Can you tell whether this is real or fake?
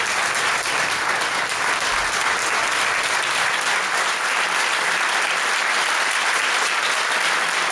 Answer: real